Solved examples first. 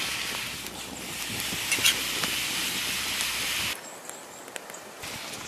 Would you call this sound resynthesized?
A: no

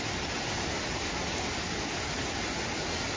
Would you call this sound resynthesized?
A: no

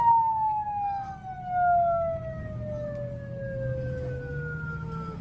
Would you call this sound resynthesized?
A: no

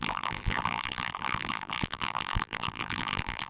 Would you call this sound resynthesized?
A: yes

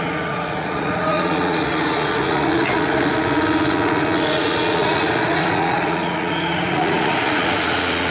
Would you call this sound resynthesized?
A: yes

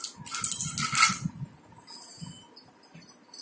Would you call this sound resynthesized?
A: no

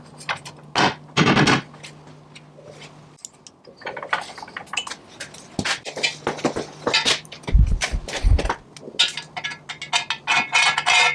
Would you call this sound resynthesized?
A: no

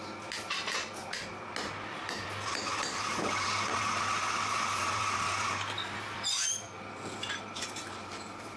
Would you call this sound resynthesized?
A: no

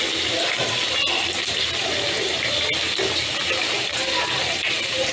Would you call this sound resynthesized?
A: yes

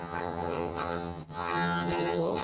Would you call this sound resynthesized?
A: yes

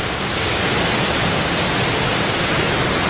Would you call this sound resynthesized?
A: no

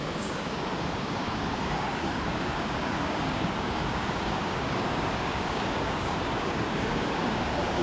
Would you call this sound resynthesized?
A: yes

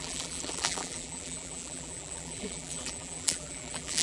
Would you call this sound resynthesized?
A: yes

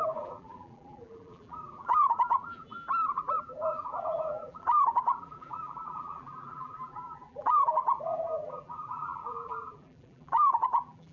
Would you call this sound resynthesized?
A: yes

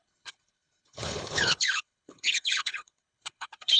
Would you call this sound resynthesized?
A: yes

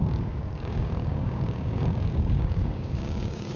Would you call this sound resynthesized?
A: yes